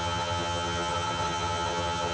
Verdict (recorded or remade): remade